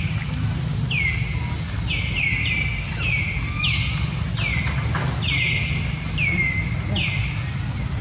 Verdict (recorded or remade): recorded